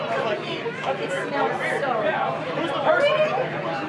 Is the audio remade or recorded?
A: recorded